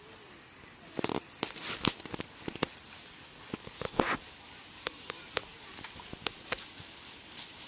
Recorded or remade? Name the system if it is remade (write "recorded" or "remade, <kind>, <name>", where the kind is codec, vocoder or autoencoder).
remade, vocoder, BigVGAN v2